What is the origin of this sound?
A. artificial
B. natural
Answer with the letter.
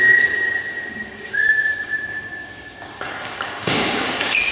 A